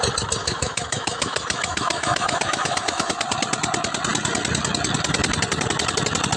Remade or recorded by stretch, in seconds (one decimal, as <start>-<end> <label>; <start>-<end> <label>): 0.0-0.4 recorded; 0.4-3.1 remade; 3.1-6.4 recorded